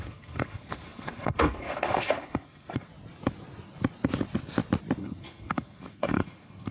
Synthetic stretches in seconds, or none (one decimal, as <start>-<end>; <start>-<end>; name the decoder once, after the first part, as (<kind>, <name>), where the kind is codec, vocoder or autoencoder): 0.0-2.9 (codec, SNAC); 5.0-6.7